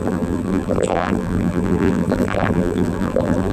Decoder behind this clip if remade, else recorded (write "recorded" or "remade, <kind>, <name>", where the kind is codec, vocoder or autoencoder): remade, vocoder, BigVGAN v2